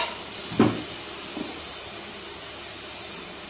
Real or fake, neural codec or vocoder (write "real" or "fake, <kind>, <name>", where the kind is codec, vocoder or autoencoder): real